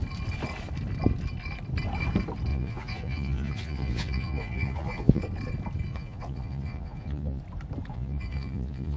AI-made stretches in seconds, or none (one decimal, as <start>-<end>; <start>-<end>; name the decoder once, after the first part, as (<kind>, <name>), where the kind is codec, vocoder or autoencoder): 2.5-5.2 (vocoder, Vocos); 5.9-7.4; 7.9-9.0